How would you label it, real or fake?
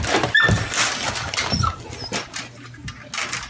real